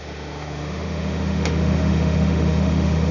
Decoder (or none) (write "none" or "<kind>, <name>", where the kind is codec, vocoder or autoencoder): autoencoder, DAC-VAE